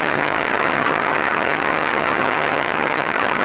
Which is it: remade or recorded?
remade